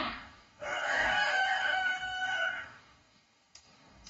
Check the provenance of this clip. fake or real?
fake